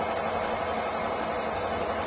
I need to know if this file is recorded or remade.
recorded